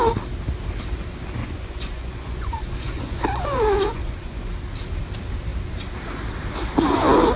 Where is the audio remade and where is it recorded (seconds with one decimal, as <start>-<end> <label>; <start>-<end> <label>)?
0.0-1.4 recorded; 1.4-4.4 remade; 4.4-7.4 recorded